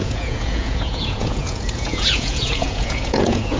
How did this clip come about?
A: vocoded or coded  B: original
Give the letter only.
A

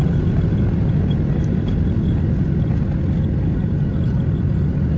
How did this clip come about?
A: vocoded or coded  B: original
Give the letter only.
B